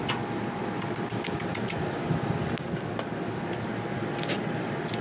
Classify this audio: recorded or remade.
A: recorded